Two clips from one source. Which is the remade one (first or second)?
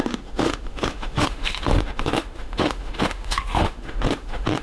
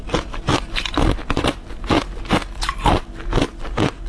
first